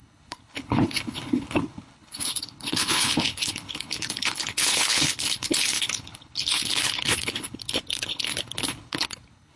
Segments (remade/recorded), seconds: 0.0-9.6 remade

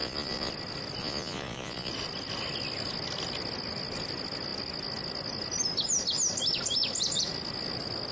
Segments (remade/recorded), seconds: 0.0-0.5 remade; 0.5-1.0 recorded; 1.0-1.9 remade; 1.9-8.1 recorded

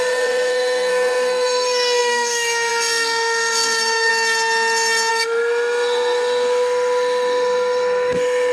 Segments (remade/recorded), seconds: 0.0-4.1 remade; 4.1-5.1 recorded; 5.1-8.5 remade

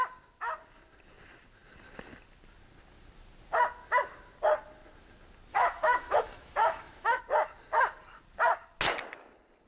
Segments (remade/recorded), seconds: 0.0-5.5 recorded; 5.5-7.2 remade; 7.2-9.7 recorded